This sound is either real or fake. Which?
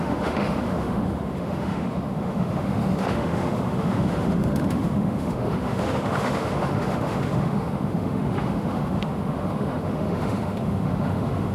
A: fake